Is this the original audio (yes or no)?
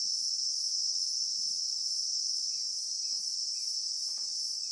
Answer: yes